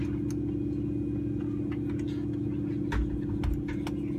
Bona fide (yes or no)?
yes